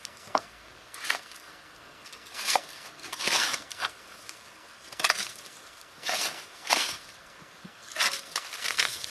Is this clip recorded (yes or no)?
no